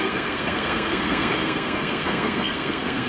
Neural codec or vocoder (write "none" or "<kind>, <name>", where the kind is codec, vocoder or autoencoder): codec, SNAC